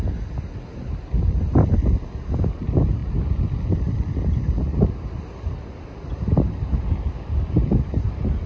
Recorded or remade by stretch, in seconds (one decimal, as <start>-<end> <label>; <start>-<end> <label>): 0.0-8.5 recorded